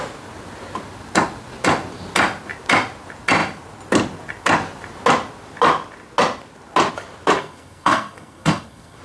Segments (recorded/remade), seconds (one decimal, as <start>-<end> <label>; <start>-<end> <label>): 0.0-7.4 recorded; 7.4-9.0 remade